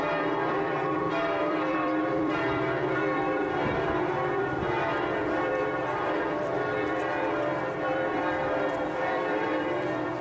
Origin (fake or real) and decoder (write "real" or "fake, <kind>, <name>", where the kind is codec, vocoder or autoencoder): fake, vocoder, BigVGAN v2